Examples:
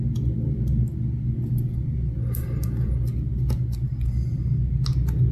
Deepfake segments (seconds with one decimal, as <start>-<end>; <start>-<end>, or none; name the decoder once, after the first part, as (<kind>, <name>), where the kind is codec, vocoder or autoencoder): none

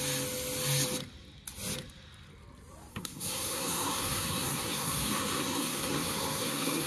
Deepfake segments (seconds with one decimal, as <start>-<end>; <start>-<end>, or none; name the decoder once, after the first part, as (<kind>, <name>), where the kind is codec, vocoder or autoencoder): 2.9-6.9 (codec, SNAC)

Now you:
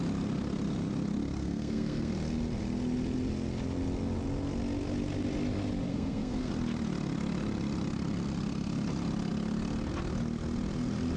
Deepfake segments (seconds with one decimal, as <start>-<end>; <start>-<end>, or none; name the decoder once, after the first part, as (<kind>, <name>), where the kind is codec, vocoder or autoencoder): 1.4-2.1 (codec, SNAC); 5.9-6.5